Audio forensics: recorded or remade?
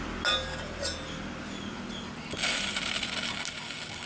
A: recorded